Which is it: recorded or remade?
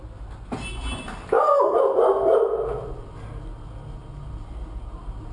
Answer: recorded